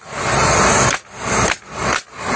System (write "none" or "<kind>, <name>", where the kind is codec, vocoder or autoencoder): none